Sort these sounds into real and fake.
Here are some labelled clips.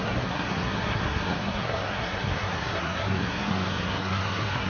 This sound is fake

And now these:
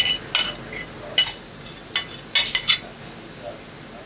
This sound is real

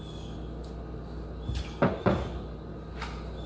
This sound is real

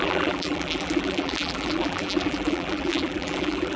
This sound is fake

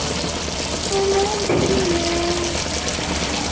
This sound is real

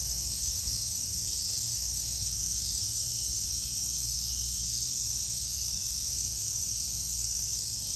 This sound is fake